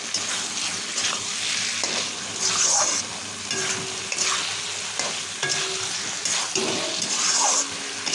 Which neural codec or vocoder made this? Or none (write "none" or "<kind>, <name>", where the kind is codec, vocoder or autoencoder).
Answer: none